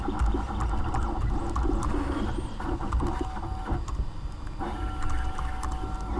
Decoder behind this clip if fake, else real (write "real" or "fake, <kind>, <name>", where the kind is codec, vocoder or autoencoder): real